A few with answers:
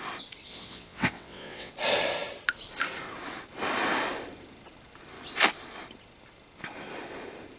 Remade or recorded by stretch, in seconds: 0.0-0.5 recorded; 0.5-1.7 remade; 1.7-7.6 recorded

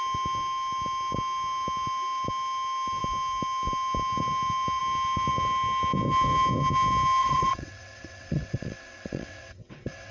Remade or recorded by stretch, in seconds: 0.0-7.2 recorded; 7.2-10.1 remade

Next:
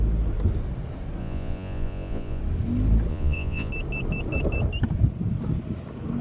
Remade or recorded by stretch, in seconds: 0.0-1.2 recorded; 1.2-2.4 remade; 2.4-3.1 recorded; 3.1-3.7 remade; 3.7-6.2 recorded

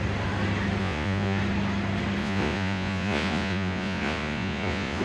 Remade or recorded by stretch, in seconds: 0.0-0.8 recorded; 0.8-1.4 remade; 1.4-2.2 recorded; 2.2-5.0 remade